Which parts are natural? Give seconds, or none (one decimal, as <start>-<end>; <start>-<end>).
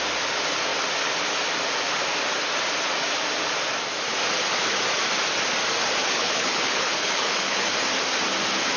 0.0-6.0; 7.7-8.8